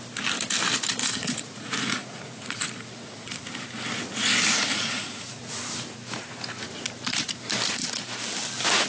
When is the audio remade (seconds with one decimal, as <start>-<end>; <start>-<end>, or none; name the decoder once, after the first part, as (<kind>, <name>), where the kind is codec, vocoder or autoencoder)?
1.0-3.4 (vocoder, Vocos); 4.7-5.4